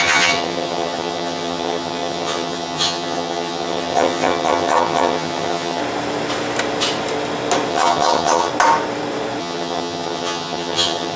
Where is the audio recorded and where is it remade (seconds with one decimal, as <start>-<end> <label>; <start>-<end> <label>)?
0.0-5.8 remade; 5.8-7.7 recorded; 7.7-8.5 remade; 8.5-9.4 recorded; 9.4-11.2 remade